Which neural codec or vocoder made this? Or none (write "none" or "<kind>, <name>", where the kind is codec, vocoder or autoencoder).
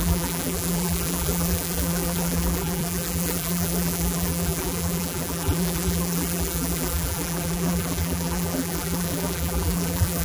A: vocoder, BigVGAN v2